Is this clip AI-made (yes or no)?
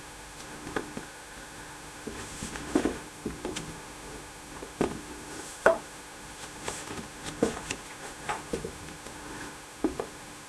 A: yes